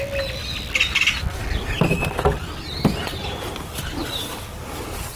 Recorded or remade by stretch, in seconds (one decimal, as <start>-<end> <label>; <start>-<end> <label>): 0.0-5.2 recorded